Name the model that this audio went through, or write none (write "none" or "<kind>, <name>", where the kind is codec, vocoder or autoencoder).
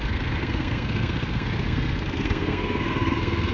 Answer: codec, SNAC